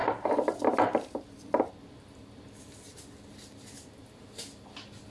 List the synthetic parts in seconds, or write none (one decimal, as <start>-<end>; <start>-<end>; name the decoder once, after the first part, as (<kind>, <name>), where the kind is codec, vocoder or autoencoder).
none